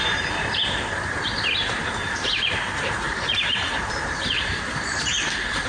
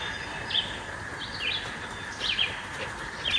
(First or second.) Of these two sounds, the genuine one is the second